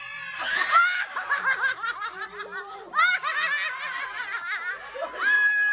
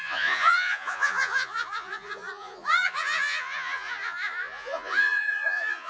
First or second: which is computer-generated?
second